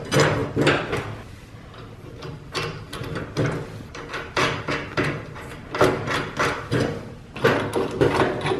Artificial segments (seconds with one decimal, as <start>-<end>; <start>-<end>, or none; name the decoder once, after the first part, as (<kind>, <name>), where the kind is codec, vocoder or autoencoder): 0.4-3.2 (vocoder, BigVGAN v2)